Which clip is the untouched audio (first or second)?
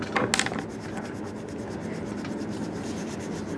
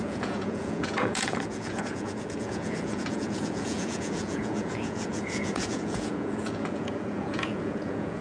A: first